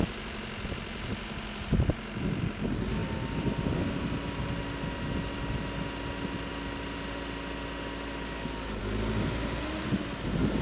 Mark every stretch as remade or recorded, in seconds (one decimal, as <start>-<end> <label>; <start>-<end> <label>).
0.0-10.6 recorded